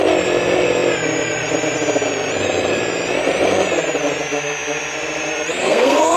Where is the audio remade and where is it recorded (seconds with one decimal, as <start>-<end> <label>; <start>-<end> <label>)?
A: 0.0-5.6 recorded; 5.6-6.2 remade

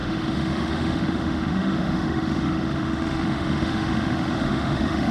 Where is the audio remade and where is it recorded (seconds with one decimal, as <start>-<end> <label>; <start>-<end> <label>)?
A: 0.0-5.1 remade

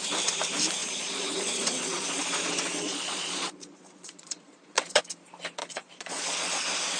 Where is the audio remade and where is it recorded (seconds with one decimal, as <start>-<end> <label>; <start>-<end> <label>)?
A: 0.0-0.8 recorded; 0.8-5.0 remade; 5.0-5.6 recorded; 5.6-6.5 remade; 6.5-7.0 recorded

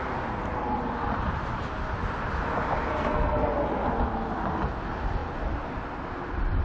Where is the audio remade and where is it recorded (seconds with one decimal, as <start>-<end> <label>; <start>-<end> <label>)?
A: 0.0-2.9 recorded; 2.9-3.5 remade; 3.5-6.6 recorded

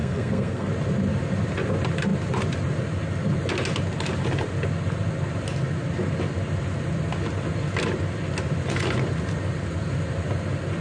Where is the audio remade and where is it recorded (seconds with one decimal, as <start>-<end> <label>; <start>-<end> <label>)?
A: 0.0-0.7 remade; 0.7-10.8 recorded

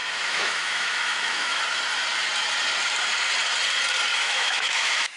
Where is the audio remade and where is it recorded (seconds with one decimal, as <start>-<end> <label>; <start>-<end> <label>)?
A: 0.0-1.6 remade; 1.6-4.1 recorded; 4.1-5.2 remade

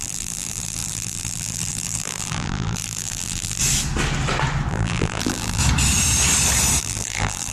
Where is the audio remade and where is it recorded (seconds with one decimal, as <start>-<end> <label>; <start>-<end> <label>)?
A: 0.0-3.6 remade; 3.6-4.7 recorded; 4.7-5.6 remade; 5.6-6.8 recorded; 6.8-7.5 remade